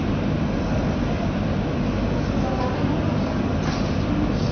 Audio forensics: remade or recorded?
recorded